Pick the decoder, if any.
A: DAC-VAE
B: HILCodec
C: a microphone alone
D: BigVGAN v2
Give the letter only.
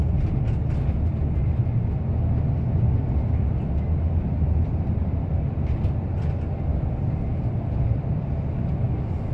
C